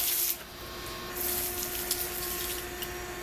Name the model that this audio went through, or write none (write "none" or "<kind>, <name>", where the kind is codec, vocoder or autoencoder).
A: none